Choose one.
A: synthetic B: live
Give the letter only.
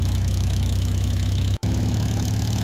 A